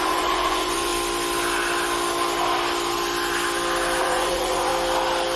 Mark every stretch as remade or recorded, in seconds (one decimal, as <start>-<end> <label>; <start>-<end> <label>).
0.0-0.9 remade; 0.9-4.0 recorded; 4.0-4.7 remade; 4.7-5.4 recorded